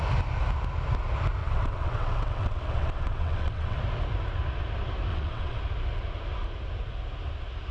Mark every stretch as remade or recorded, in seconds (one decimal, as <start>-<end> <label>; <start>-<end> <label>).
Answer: 0.0-1.4 recorded; 1.4-3.8 remade; 3.8-5.1 recorded; 5.1-5.6 remade; 5.6-7.7 recorded

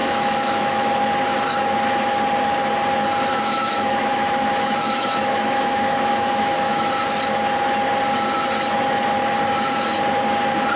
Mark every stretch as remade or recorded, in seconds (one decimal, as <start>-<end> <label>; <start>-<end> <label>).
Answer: 0.0-0.9 remade; 0.9-3.3 recorded; 3.3-6.9 remade; 6.9-10.8 recorded

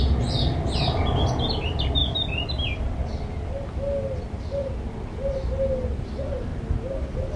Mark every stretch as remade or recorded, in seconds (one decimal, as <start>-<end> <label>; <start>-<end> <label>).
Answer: 0.0-7.4 recorded

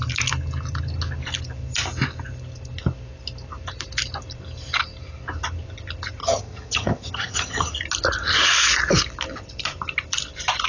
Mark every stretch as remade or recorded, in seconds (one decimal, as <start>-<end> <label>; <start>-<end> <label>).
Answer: 0.0-6.2 recorded; 6.2-7.7 remade; 7.7-10.7 recorded